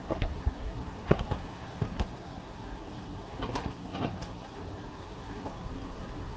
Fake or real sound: fake